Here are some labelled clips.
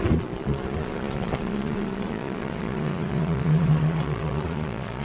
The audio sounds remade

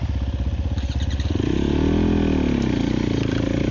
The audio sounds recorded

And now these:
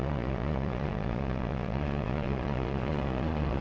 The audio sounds remade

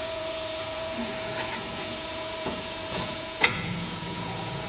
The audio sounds remade